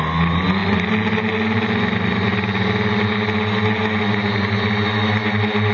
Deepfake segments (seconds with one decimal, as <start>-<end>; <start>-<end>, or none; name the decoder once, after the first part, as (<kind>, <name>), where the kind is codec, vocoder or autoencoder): none